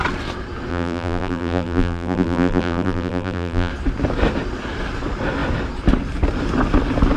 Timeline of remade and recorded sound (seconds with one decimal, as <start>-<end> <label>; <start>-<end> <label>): 0.0-0.7 recorded; 0.7-3.7 remade; 3.7-7.2 recorded